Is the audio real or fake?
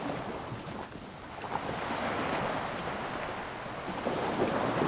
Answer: real